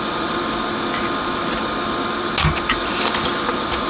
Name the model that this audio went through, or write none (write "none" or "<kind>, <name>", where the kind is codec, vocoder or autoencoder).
none